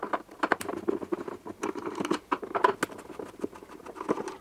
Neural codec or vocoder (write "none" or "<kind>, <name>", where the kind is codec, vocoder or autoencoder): none